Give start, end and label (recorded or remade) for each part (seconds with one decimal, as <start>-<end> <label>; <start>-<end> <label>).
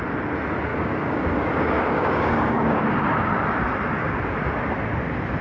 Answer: 0.0-0.7 recorded; 0.7-2.8 remade; 2.8-4.0 recorded; 4.0-4.6 remade; 4.6-5.4 recorded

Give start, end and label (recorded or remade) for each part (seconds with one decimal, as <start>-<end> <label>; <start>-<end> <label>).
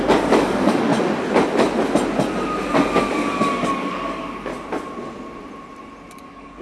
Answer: 0.0-0.9 remade; 0.9-2.7 recorded; 2.7-4.5 remade; 4.5-6.1 recorded; 6.1-6.6 remade